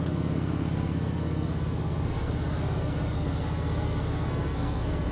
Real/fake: fake